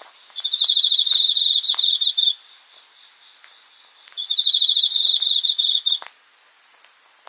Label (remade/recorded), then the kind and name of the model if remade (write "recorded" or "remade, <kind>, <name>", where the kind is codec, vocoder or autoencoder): recorded